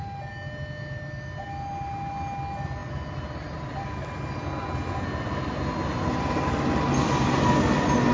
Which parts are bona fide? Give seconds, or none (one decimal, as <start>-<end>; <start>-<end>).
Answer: 0.0-8.1